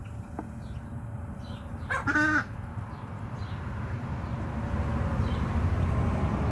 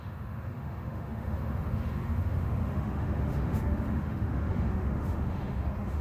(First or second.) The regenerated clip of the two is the second